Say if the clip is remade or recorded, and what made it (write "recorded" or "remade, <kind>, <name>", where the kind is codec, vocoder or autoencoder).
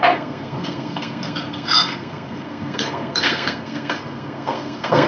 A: remade, codec, SNAC